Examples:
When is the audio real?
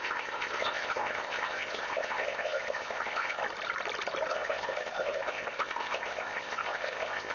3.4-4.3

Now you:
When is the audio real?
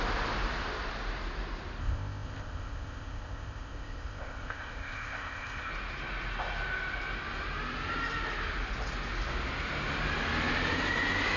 0.0-1.8; 5.7-11.4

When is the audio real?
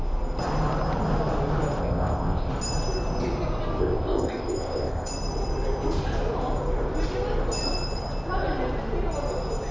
0.0-1.8; 2.5-3.8; 5.1-9.7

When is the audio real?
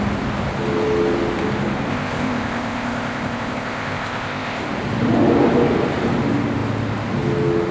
0.0-1.9; 4.6-7.7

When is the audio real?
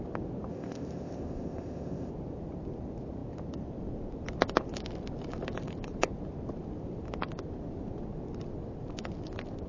0.0-0.5; 2.1-9.7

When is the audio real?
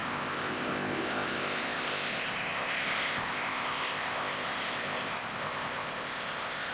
none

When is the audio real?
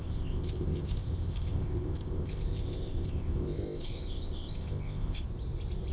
5.2-5.9